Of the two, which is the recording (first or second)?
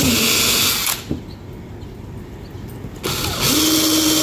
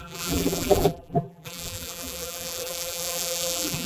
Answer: first